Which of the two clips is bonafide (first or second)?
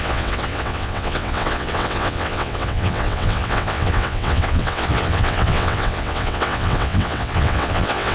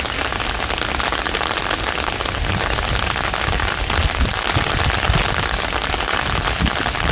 second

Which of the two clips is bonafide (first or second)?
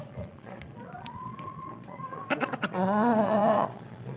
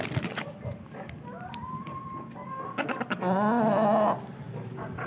second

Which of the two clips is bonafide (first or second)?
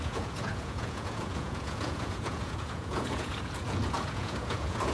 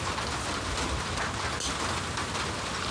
second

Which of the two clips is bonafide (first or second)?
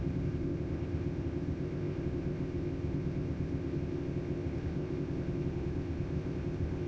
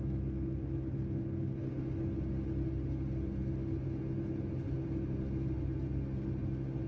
second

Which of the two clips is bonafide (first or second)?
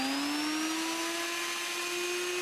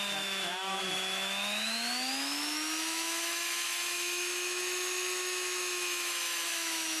first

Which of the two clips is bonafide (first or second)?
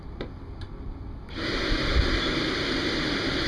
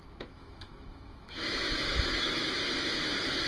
first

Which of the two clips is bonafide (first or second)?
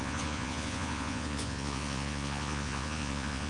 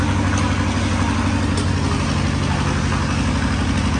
second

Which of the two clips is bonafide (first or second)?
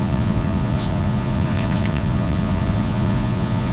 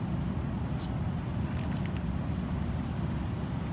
second